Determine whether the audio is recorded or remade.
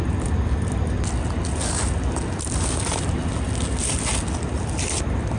recorded